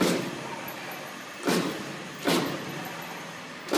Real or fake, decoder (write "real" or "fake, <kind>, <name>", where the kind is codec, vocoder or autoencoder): real